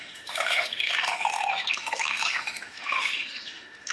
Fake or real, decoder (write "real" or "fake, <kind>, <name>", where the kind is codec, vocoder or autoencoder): fake, autoencoder, DAC-VAE